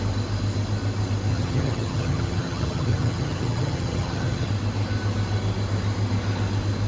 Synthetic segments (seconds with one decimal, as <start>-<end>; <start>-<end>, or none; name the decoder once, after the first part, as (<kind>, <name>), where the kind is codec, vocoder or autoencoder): 1.3-4.5 (vocoder, HiFi-GAN)